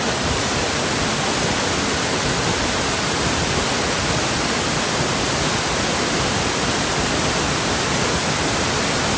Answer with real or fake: real